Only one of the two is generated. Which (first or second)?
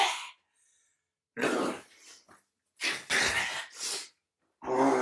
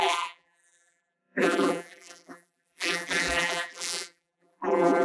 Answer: second